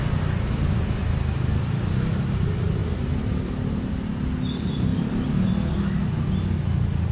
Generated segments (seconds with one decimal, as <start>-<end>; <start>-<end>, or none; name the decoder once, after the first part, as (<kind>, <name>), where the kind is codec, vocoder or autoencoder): none